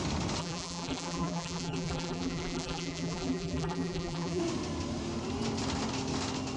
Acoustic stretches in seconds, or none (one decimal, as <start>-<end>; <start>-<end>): 0.0-0.4; 4.4-6.6